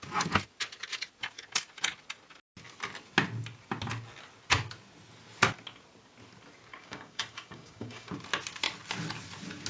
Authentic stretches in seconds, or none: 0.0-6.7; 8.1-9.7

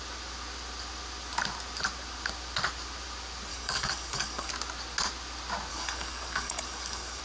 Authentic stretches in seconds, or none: 0.0-3.5; 4.5-5.7

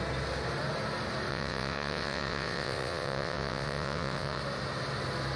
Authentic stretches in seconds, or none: 0.0-1.3; 4.4-5.4

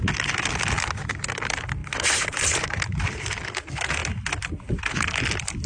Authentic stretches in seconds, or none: 0.0-1.8; 3.2-5.7

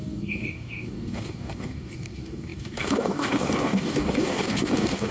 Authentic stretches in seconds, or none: none

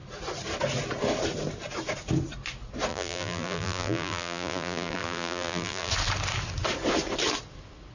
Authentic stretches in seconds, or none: 0.0-2.9; 5.9-7.9

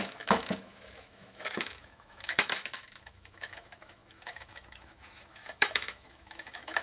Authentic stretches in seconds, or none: none

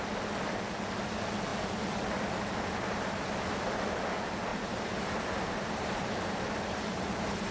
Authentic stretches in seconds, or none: 0.0-4.5